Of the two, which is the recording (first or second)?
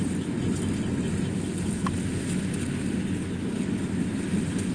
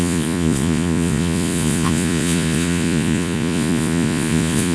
first